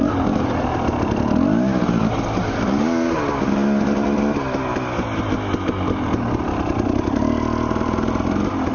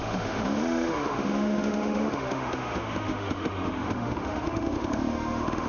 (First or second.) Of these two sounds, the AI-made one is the second